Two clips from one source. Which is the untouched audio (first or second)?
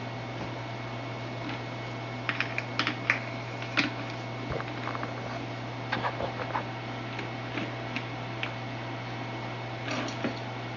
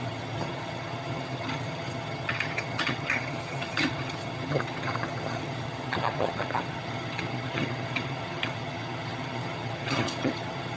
first